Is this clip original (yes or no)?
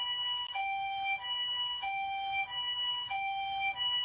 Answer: yes